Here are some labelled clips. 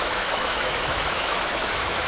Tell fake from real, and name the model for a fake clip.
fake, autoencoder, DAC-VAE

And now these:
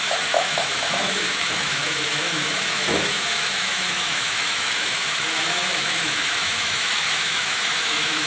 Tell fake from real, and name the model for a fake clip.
fake, autoencoder, DAC-VAE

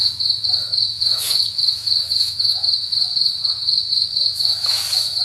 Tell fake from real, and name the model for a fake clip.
fake, autoencoder, DAC-VAE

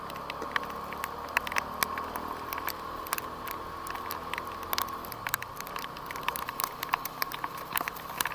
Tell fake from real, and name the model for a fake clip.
real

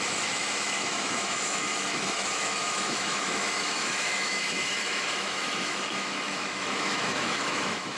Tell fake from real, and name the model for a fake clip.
fake, autoencoder, DAC-VAE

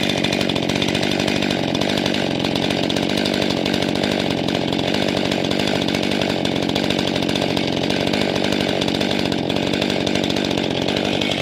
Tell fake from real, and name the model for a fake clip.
real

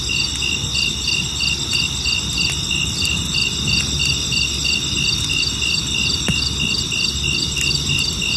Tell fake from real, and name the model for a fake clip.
real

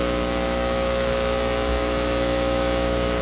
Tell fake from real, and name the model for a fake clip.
fake, autoencoder, DAC-VAE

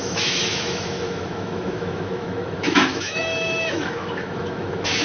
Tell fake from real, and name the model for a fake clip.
fake, autoencoder, DAC-VAE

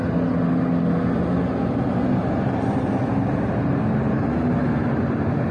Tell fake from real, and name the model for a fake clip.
real